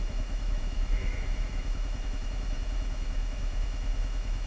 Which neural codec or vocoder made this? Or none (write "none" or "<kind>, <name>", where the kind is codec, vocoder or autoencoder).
autoencoder, DAC-VAE